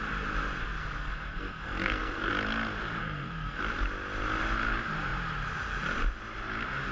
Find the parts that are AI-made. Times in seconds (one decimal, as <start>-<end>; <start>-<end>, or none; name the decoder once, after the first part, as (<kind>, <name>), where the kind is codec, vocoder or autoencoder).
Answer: 0.6-2.3 (codec, SNAC); 3.0-3.6